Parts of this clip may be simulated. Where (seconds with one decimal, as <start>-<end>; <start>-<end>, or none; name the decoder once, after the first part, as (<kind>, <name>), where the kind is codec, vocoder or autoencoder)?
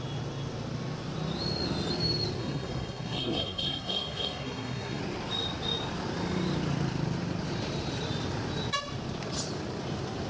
2.4-5.0 (codec, SNAC)